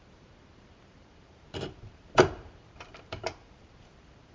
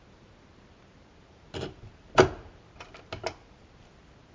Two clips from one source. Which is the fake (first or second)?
first